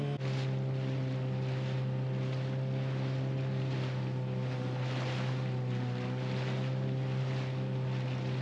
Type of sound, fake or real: real